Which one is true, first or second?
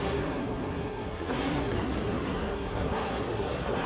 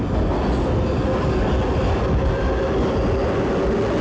second